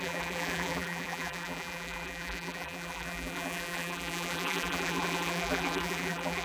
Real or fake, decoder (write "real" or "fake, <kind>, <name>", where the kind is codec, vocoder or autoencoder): fake, vocoder, BigVGAN v2